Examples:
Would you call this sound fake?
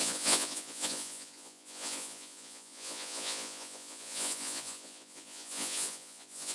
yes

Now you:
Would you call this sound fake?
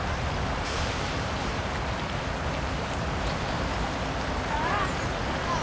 yes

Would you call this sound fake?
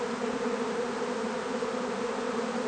yes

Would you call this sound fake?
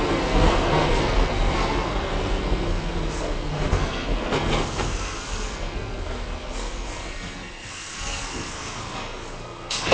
yes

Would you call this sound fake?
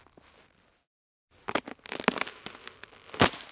no